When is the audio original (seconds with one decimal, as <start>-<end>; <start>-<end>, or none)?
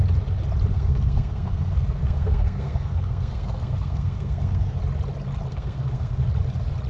0.0-0.7; 4.8-5.5; 6.3-6.9